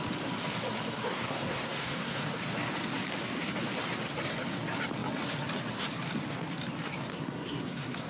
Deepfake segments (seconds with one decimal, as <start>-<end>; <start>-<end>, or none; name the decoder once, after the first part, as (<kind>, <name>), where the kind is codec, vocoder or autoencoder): 1.1-2.3 (codec, SNAC); 7.1-8.1